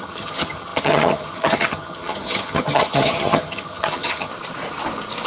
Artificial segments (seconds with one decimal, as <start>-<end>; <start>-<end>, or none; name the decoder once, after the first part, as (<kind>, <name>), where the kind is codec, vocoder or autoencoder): 0.0-4.3 (vocoder, HiFi-GAN)